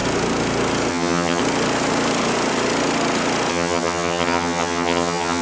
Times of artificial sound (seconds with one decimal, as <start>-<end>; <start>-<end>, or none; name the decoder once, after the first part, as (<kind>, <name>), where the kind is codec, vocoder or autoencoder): 0.9-1.4 (vocoder, HiFi-GAN); 3.5-5.4